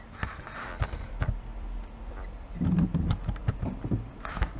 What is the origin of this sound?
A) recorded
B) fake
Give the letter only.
B